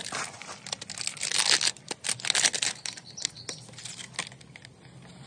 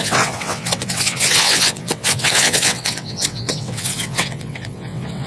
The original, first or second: first